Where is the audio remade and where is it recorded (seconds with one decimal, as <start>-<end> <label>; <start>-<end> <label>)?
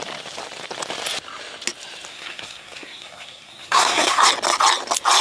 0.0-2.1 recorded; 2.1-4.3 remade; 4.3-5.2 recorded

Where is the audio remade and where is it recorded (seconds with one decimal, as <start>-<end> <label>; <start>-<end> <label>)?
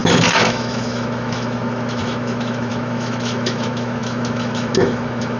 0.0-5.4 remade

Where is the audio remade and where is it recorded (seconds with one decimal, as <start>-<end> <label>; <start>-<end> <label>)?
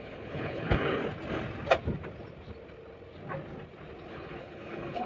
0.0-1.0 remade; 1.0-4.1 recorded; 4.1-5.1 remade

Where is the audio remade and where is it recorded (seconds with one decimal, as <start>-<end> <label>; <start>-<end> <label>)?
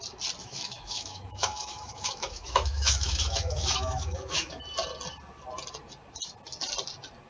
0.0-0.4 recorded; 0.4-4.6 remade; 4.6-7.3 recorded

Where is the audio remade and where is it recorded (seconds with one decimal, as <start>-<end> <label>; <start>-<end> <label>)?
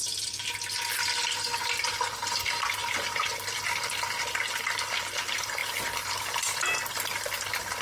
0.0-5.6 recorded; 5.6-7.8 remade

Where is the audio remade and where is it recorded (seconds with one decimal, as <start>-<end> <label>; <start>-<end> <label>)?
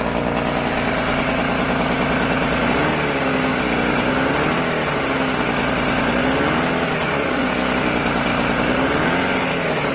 0.0-7.0 recorded; 7.0-7.5 remade; 7.5-9.9 recorded